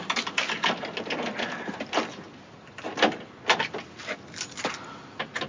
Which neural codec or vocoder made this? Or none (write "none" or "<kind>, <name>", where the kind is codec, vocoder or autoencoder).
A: none